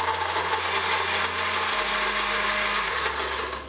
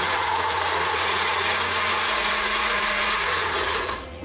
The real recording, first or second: first